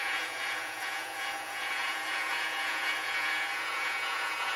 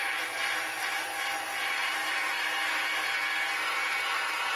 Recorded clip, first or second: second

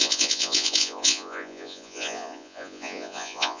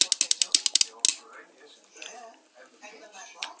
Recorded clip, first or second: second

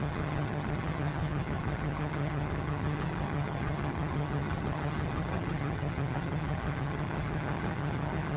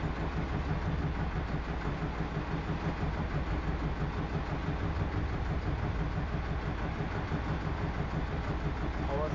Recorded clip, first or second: second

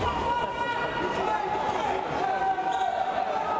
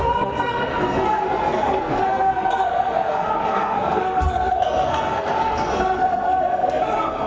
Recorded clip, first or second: first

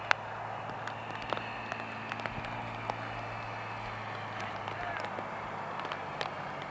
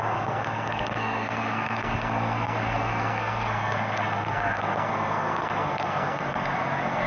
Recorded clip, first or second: first